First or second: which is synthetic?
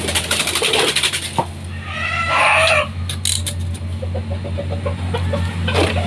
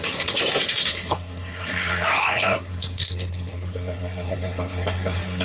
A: second